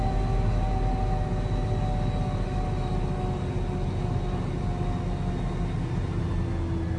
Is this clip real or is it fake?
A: real